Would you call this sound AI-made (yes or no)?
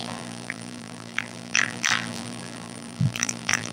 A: yes